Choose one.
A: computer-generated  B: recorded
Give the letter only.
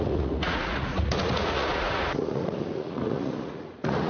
A